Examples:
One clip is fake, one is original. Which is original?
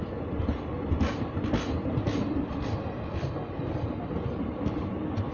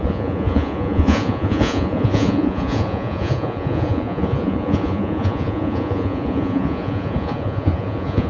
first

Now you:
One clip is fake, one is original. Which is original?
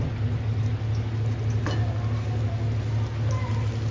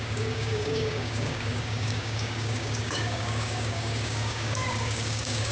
first